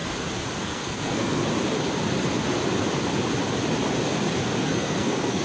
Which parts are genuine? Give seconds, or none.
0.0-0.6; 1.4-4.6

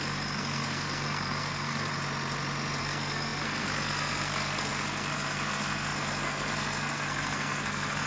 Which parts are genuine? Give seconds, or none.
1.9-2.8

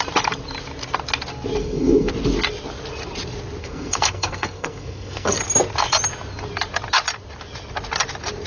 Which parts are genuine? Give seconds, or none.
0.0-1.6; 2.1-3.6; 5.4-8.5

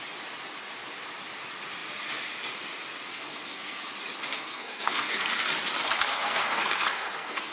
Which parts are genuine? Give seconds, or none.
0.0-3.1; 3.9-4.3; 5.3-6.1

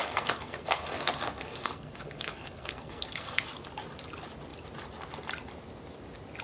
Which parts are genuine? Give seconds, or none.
3.4-6.4

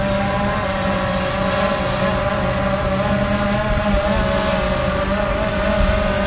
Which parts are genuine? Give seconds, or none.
0.0-6.3

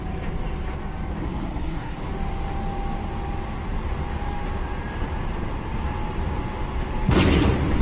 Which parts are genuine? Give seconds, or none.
0.0-1.2; 2.0-7.8